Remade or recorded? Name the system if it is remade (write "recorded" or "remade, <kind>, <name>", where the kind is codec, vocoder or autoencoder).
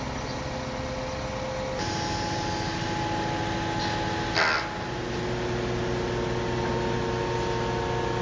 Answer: recorded